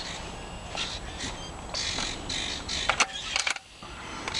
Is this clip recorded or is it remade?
recorded